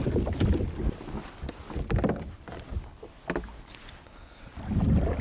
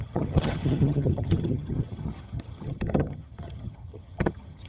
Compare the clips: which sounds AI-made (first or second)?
second